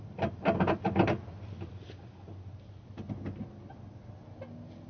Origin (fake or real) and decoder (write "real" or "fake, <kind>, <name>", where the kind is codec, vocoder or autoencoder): real